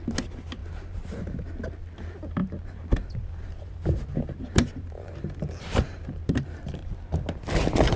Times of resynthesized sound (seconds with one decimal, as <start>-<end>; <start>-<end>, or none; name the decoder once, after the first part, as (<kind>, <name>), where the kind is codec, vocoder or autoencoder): 0.6-1.2 (vocoder, BigVGAN v2); 2.4-6.9